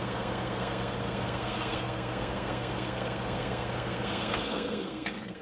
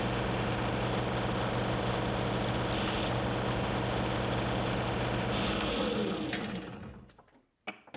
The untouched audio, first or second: second